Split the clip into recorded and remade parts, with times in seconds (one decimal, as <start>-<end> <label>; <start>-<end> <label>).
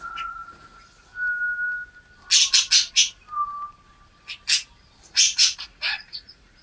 0.0-1.1 remade; 1.1-5.1 recorded; 5.1-6.6 remade